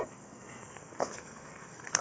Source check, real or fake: fake